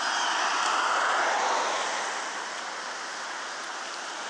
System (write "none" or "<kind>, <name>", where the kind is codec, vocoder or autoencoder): none